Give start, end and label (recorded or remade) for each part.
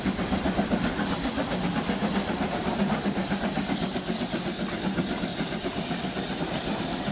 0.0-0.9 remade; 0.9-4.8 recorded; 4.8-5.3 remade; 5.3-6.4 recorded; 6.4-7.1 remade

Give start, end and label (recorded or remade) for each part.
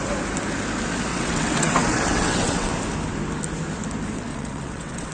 0.0-1.1 recorded; 1.1-2.7 remade; 2.7-4.3 recorded; 4.3-5.1 remade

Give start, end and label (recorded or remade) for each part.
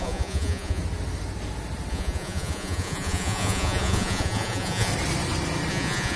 0.0-0.8 remade; 0.8-1.9 recorded; 1.9-4.9 remade; 4.9-5.7 recorded; 5.7-6.2 remade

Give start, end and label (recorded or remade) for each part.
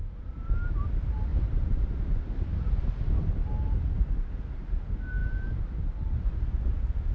0.0-1.3 recorded; 1.3-2.1 remade; 2.1-7.1 recorded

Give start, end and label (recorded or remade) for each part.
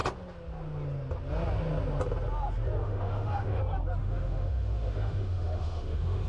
0.0-2.8 recorded; 2.8-3.6 remade; 3.6-4.0 recorded; 4.0-6.3 remade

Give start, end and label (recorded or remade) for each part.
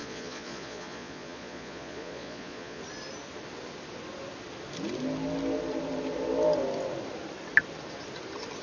0.0-2.8 remade; 2.8-8.6 recorded